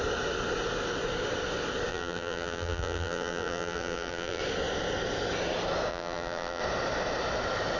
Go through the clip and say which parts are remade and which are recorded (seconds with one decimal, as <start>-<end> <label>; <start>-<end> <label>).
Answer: 0.0-1.9 recorded; 1.9-4.4 remade; 4.4-5.9 recorded; 5.9-6.6 remade; 6.6-7.8 recorded